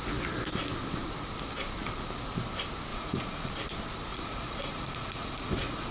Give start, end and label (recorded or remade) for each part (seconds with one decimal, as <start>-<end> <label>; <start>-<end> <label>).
0.0-2.9 recorded; 2.9-3.5 remade; 3.5-4.1 recorded; 4.1-5.9 remade